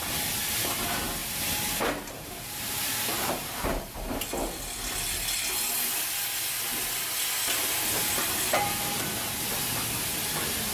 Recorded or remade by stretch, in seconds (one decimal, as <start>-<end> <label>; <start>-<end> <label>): 0.0-1.2 recorded; 1.2-4.2 remade; 4.2-10.7 recorded

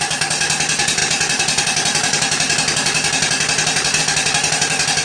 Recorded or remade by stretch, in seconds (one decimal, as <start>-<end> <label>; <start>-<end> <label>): 0.0-5.0 recorded

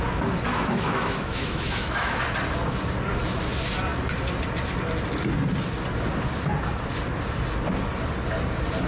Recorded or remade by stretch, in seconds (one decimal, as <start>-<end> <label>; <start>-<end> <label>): 0.0-0.5 recorded; 0.5-2.2 remade; 2.2-8.9 recorded

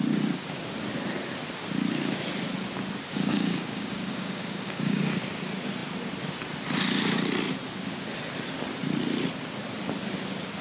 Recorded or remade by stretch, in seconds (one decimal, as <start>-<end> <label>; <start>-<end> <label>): 0.0-3.1 recorded; 3.1-5.3 remade; 5.3-10.6 recorded

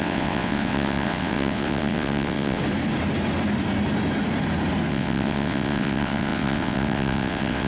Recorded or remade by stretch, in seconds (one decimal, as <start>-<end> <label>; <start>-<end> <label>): 0.0-2.6 remade; 2.6-4.9 recorded; 4.9-7.7 remade

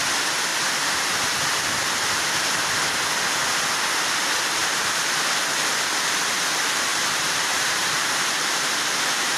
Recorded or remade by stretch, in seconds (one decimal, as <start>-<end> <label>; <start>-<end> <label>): 0.0-4.6 recorded; 4.6-5.2 remade; 5.2-6.9 recorded; 6.9-8.9 remade; 8.9-9.4 recorded

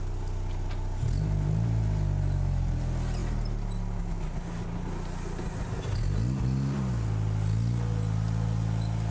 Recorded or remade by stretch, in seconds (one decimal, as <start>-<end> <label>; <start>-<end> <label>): 0.0-9.1 recorded

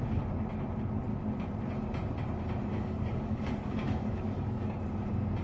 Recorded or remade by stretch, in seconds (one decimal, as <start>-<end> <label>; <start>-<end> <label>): 0.0-2.7 recorded; 2.7-4.8 remade; 4.8-5.4 recorded